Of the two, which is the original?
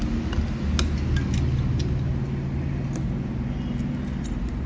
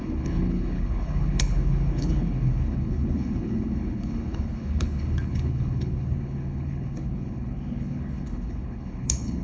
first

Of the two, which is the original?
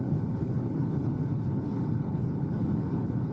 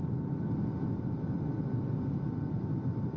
second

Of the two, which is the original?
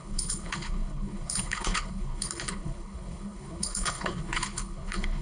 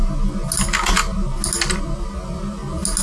second